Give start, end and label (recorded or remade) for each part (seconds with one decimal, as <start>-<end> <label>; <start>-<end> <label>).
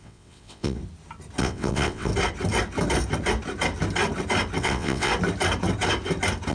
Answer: 0.0-0.8 remade; 0.8-1.4 recorded; 1.4-2.1 remade; 2.1-4.6 recorded; 4.6-5.1 remade; 5.1-6.5 recorded